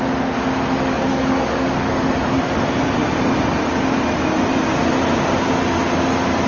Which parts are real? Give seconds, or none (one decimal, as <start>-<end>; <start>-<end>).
0.0-1.1; 2.1-6.5